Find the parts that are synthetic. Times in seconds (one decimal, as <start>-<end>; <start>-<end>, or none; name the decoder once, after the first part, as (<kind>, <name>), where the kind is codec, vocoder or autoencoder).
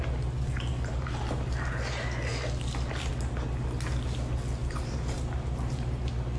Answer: 0.7-1.7 (vocoder, BigVGAN v2); 4.6-6.0